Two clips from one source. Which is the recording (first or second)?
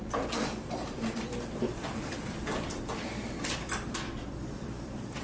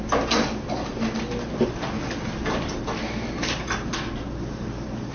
second